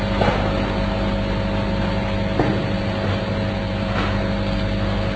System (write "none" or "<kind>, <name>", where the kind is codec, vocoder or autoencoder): none